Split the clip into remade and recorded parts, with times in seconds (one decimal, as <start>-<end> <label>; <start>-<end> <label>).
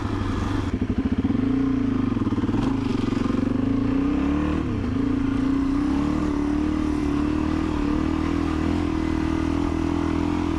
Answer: 0.0-10.6 recorded